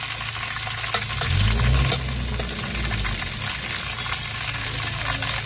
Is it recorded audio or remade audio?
recorded